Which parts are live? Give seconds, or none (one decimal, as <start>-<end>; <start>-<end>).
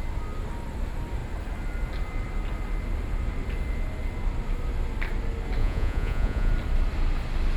0.0-5.6; 6.5-7.6